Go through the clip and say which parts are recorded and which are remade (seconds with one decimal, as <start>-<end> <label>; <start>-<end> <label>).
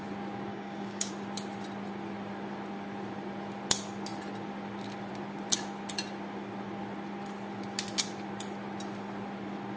0.0-0.5 recorded; 0.5-1.1 remade; 1.1-9.8 recorded